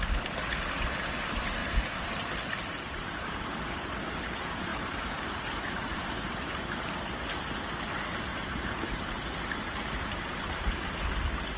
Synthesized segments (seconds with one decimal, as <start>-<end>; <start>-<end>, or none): 1.6-3.9; 4.7-7.1; 8.3-10.9